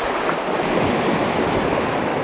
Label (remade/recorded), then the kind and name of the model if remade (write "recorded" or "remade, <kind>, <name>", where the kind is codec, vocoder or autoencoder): recorded